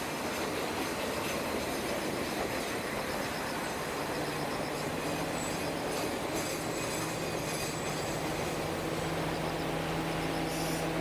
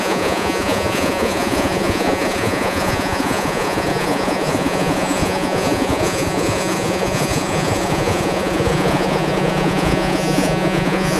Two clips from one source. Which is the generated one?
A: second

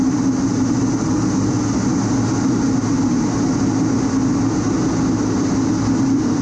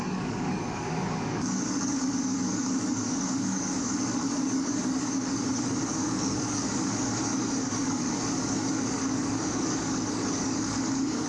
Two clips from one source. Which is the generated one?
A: second